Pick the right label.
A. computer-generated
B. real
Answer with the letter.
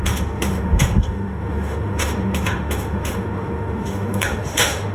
A